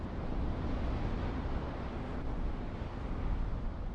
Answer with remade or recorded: recorded